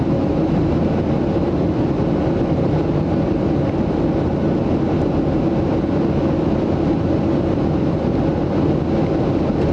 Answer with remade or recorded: recorded